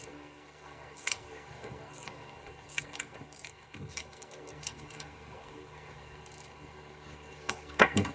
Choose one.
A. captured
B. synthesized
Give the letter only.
B